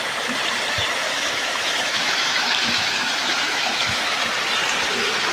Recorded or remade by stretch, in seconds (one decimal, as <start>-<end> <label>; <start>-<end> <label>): 0.0-1.0 recorded; 1.0-4.2 remade; 4.2-5.3 recorded